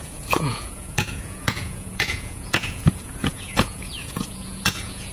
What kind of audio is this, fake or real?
fake